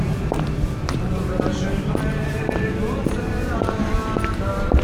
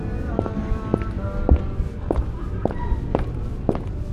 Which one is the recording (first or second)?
second